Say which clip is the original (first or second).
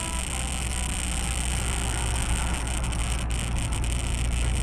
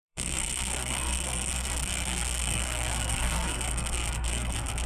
first